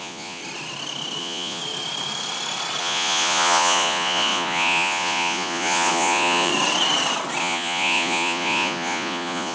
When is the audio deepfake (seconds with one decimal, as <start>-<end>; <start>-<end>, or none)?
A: 0.0-0.4; 1.2-1.6; 2.8-6.5; 7.4-9.5